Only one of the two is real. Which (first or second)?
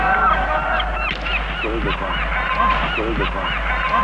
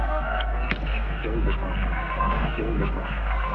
first